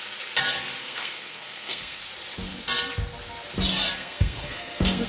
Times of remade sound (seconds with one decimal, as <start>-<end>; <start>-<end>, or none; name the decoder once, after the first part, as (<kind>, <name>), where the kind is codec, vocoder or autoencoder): 0.8-2.0 (codec, SNAC); 4.0-5.1